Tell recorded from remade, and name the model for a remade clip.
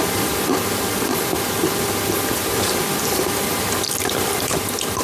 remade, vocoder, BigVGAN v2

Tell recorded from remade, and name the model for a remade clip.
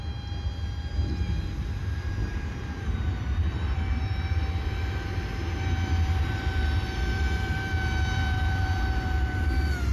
remade, vocoder, BigVGAN v2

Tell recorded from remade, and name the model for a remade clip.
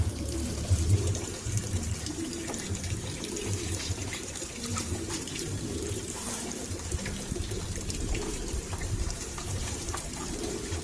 remade, vocoder, BigVGAN v2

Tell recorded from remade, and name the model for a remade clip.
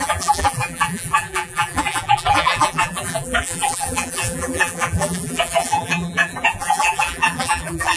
remade, vocoder, BigVGAN v2